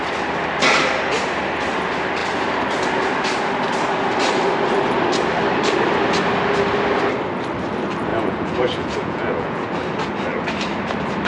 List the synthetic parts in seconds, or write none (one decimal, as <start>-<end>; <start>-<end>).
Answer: 8.1-9.7